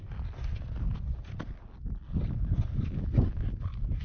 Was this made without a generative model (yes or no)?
yes